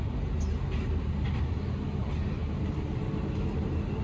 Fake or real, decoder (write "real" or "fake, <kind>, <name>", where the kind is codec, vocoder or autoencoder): real